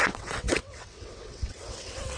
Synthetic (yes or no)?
yes